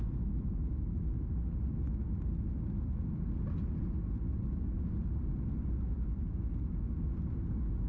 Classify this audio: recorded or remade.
recorded